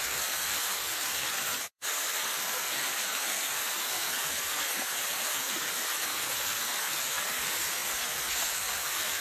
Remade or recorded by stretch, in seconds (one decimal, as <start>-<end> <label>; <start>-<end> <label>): 0.0-9.2 remade